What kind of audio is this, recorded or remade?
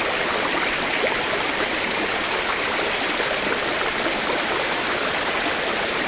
recorded